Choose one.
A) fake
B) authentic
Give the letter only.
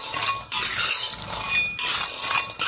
B